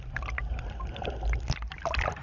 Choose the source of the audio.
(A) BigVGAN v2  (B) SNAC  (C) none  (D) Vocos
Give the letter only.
C